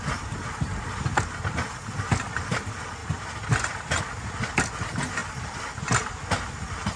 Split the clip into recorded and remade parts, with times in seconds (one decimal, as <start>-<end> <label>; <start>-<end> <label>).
0.0-7.0 recorded